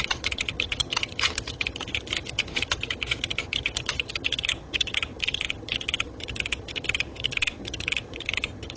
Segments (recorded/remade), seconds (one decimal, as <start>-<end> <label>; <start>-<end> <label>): 0.0-8.8 remade